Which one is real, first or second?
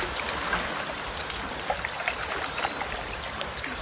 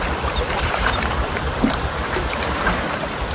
first